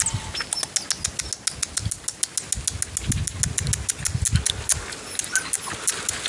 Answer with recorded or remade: recorded